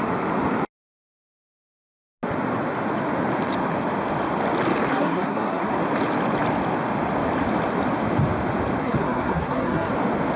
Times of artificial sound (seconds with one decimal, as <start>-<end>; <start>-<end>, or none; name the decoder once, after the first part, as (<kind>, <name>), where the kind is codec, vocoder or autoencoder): 4.9-5.7 (codec, SNAC); 8.8-9.9